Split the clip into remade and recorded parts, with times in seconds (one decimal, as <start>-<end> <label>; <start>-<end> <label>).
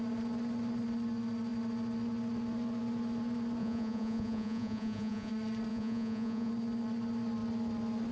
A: 0.0-3.6 recorded; 3.6-5.3 remade; 5.3-5.7 recorded; 5.7-6.5 remade; 6.5-8.1 recorded